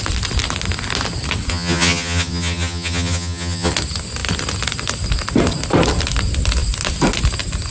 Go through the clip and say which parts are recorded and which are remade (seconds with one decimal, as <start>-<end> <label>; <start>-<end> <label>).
0.0-1.5 recorded; 1.5-3.7 remade; 3.7-7.7 recorded